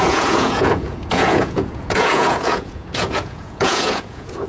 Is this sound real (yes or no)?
no